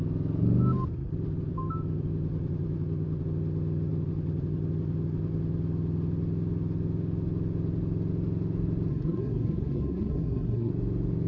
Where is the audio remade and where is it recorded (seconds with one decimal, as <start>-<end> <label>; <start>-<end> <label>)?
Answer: 0.0-8.9 recorded; 8.9-10.7 remade; 10.7-11.3 recorded